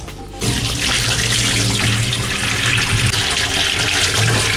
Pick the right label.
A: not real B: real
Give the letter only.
B